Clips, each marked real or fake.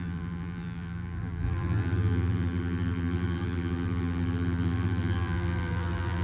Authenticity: fake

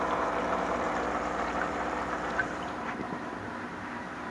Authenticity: fake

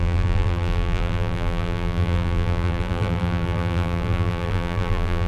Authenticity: fake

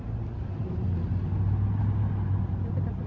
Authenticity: real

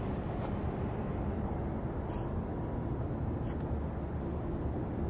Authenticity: real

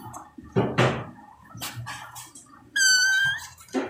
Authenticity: fake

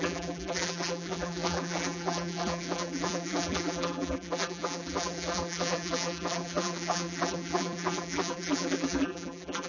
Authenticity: fake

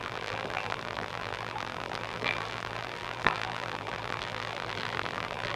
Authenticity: fake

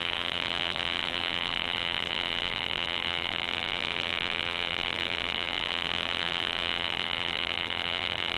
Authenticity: fake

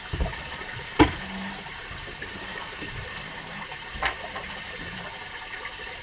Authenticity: fake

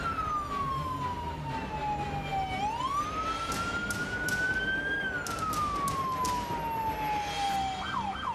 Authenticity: real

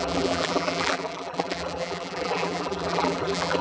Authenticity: fake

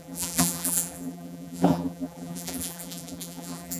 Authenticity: fake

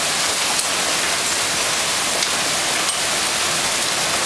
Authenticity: real